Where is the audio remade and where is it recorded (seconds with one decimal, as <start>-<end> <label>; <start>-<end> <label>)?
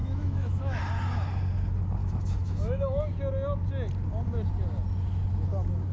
0.0-0.8 remade; 0.8-2.0 recorded; 2.0-3.0 remade; 3.0-5.9 recorded